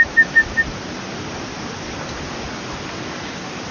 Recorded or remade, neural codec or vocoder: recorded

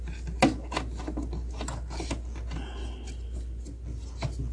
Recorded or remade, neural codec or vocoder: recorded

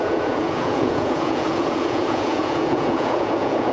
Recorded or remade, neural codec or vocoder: remade, vocoder, Vocos